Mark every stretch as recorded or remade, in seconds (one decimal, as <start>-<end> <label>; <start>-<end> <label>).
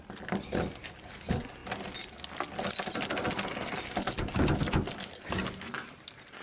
0.0-6.4 recorded